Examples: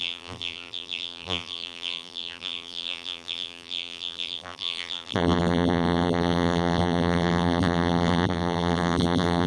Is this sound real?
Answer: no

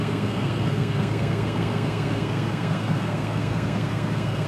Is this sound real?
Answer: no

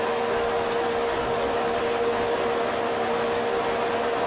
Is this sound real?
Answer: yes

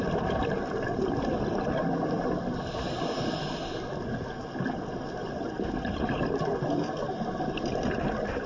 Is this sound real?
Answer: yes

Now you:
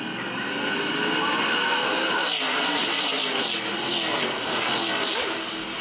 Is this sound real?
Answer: yes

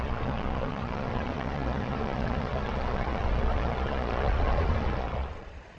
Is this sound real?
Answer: no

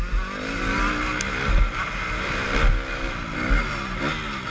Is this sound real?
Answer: yes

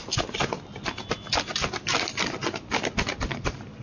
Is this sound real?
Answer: yes